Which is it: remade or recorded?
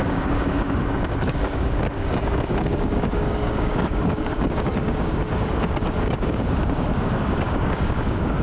remade